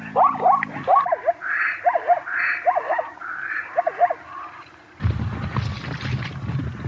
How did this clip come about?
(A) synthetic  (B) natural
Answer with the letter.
B